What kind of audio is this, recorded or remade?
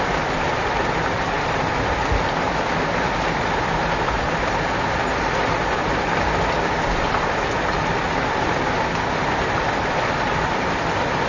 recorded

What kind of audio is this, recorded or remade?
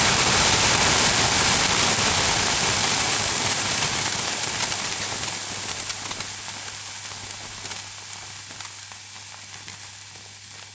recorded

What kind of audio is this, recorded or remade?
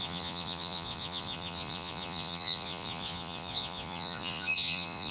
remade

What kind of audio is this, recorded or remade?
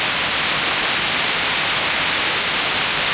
recorded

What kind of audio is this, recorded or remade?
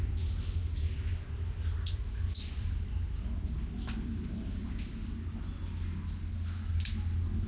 recorded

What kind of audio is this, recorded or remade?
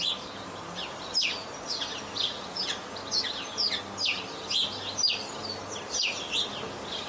recorded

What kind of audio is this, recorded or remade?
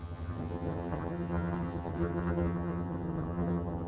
remade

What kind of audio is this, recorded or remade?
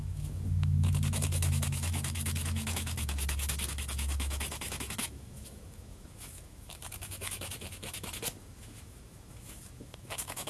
remade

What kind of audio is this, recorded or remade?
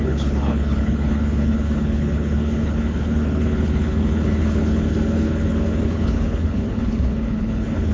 remade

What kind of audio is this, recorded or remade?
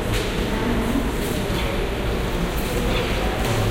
recorded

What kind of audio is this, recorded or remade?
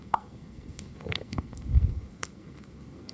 remade